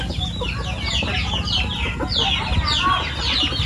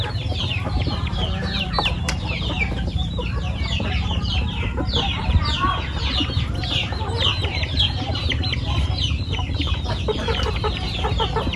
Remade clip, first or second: second